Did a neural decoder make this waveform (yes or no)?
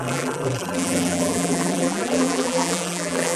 yes